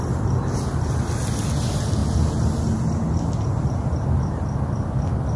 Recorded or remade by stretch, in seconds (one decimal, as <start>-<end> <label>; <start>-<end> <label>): 0.0-5.4 recorded